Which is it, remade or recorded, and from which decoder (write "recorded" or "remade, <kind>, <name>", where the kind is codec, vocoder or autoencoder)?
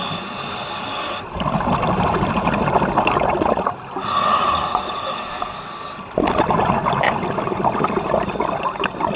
recorded